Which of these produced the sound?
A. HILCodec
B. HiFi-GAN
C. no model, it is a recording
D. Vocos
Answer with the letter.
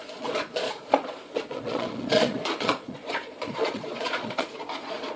D